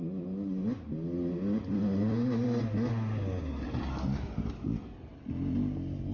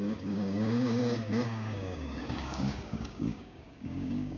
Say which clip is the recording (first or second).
first